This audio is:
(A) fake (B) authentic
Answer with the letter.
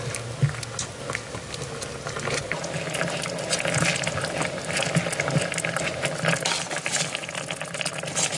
B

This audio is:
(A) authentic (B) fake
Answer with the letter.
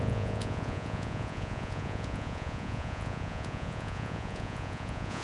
B